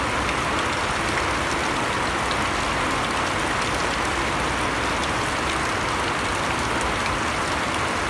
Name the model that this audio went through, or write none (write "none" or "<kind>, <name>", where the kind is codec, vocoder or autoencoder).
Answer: none